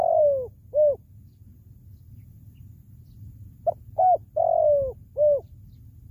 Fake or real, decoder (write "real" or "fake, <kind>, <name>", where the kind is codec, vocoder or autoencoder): real